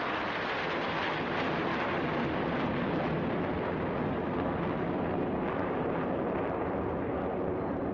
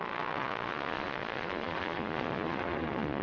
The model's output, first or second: second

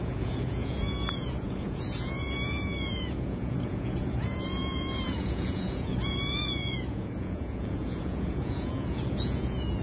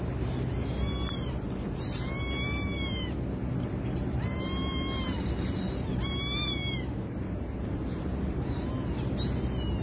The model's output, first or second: first